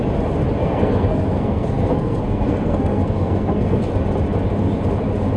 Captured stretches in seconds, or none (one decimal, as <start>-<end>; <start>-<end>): 0.0-0.6; 3.8-5.4